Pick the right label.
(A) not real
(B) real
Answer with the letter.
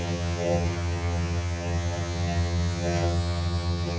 A